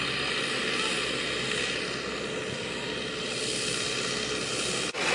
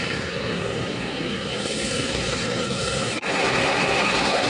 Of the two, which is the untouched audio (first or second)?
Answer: first